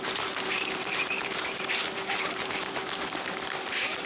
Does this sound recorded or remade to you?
remade